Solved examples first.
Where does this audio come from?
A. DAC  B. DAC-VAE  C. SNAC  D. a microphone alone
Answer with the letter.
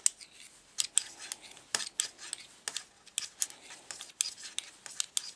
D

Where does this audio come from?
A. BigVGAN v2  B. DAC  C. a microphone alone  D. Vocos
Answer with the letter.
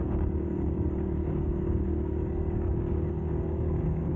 B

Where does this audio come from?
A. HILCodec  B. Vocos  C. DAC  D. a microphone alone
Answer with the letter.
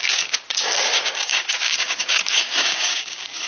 C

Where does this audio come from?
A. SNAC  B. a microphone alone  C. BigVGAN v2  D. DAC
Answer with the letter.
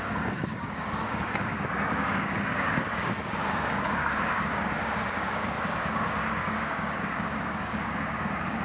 D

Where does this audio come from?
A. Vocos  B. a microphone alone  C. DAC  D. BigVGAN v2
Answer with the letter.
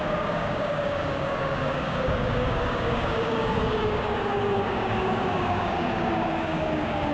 C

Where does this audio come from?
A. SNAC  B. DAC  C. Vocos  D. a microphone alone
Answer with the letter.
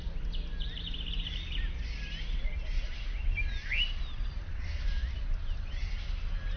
D